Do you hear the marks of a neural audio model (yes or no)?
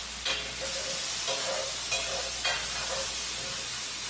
no